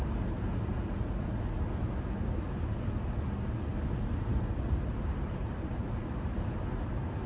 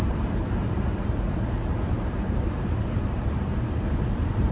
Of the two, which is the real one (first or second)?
first